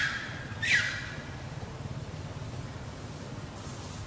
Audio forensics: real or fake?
real